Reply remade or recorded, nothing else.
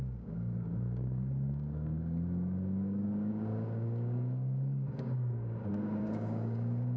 remade